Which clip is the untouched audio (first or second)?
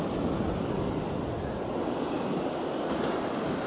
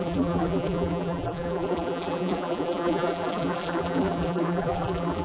first